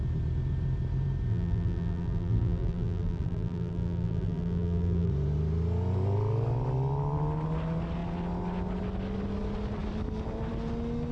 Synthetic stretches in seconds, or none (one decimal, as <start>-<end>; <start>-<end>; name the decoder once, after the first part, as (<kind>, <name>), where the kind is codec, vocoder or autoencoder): 1.3-5.1 (vocoder, BigVGAN v2)